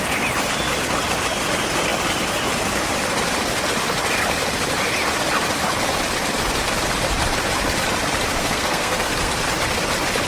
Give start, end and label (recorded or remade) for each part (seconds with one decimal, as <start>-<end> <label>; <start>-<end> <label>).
0.0-8.4 recorded; 8.4-9.3 remade; 9.3-10.3 recorded